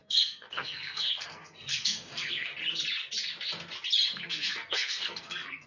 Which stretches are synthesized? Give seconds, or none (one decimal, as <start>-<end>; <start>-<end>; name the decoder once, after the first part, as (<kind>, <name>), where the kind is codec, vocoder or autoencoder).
0.0-2.5 (codec, SNAC); 4.1-5.7